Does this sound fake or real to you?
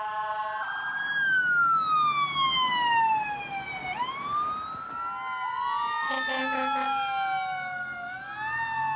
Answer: real